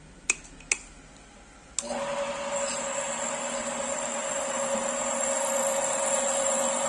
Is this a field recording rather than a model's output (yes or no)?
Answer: yes